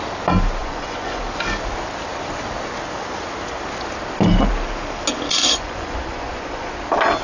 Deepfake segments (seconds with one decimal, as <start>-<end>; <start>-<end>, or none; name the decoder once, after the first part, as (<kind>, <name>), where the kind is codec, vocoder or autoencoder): 0.6-1.2 (vocoder, Vocos); 5.4-6.7